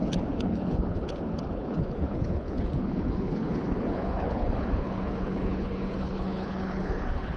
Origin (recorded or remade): remade